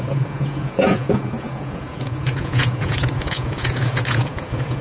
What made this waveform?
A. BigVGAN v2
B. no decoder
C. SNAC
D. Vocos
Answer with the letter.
D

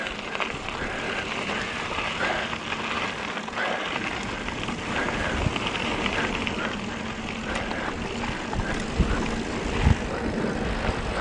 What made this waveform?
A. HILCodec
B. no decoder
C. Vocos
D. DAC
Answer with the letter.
B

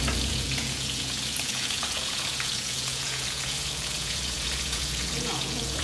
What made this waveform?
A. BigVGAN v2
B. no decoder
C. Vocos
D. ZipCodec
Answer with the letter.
C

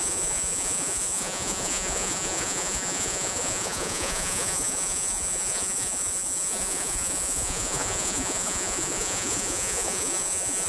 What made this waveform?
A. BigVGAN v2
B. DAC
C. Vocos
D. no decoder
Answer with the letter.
C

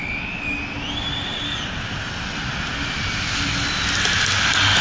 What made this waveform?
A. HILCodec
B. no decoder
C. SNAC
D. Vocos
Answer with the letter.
B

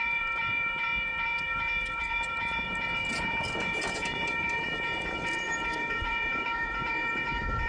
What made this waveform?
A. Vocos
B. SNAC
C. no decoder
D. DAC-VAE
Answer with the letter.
A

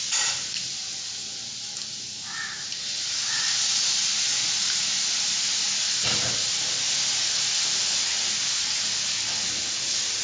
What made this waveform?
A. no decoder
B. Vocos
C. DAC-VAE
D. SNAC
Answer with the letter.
A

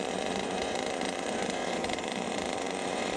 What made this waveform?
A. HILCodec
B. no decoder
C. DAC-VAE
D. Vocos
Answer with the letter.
D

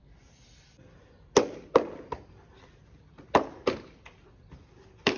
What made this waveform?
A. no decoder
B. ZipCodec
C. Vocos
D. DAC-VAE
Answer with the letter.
A